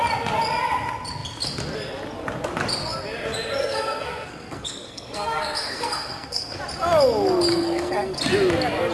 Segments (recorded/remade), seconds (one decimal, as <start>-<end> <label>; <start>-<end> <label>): 0.0-3.6 recorded; 3.6-6.6 remade; 6.6-7.5 recorded; 7.5-8.2 remade; 8.2-8.9 recorded